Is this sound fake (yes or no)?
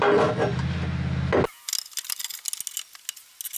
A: no